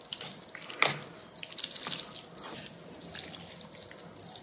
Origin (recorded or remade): recorded